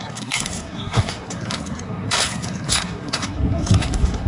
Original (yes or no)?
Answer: no